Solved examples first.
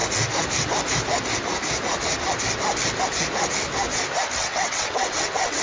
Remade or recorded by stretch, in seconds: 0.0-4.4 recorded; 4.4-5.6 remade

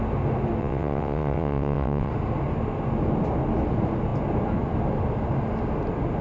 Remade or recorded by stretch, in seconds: 0.0-0.6 recorded; 0.6-2.1 remade; 2.1-6.2 recorded

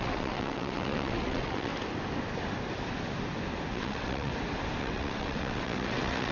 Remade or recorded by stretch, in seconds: 0.0-1.7 remade; 1.7-3.7 recorded; 3.7-4.3 remade; 4.3-4.8 recorded; 4.8-6.3 remade

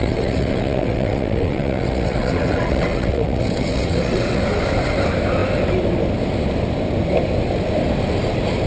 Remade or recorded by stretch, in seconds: 0.0-4.4 remade; 4.4-8.7 recorded

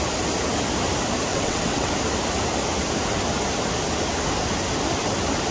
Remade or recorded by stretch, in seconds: 0.0-1.3 recorded; 1.3-1.9 remade; 1.9-5.5 recorded

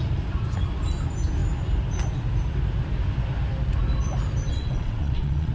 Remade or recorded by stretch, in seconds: 0.0-4.5 recorded; 4.5-5.5 remade

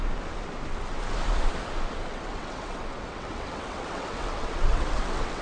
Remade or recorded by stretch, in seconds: 0.0-2.1 recorded; 2.1-5.4 remade